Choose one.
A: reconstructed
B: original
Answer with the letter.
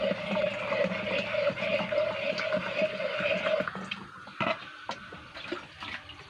B